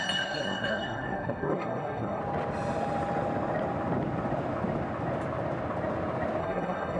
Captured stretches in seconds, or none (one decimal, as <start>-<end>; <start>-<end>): 2.2-6.4